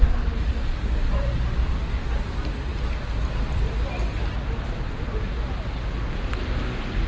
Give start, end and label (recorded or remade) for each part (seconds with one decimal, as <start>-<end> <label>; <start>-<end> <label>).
0.0-7.1 recorded